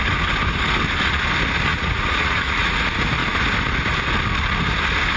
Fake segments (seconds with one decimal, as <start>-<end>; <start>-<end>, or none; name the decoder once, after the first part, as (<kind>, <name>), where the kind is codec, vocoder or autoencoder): 1.7-2.8 (vocoder, Vocos)